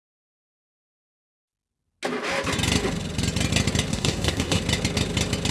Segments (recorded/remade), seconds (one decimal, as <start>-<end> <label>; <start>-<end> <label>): 0.0-3.9 recorded; 3.9-4.6 remade; 4.6-5.5 recorded